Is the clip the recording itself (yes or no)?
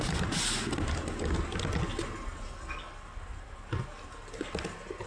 yes